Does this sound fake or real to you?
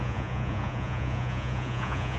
fake